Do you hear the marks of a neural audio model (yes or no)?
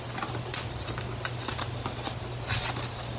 no